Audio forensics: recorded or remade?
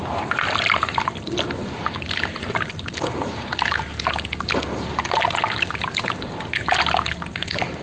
recorded